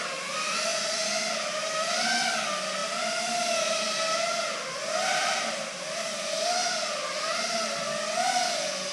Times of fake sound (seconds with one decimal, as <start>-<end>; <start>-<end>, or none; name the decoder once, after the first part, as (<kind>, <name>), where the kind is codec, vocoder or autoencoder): 0.7-2.0 (vocoder, BigVGAN v2); 2.8-4.3; 5.1-7.2